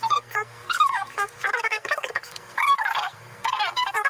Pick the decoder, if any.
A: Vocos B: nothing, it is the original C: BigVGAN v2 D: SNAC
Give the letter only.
D